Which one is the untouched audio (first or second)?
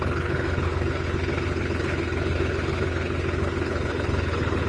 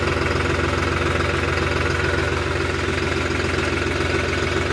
second